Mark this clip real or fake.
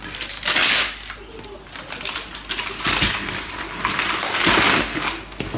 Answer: real